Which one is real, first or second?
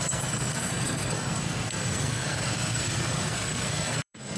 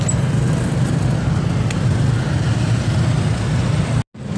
second